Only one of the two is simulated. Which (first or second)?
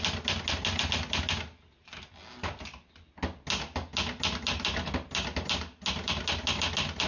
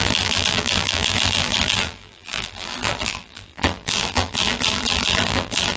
second